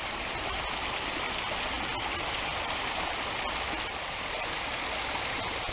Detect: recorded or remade recorded